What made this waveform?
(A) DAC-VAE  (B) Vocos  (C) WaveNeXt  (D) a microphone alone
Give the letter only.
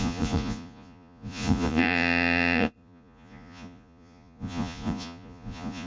B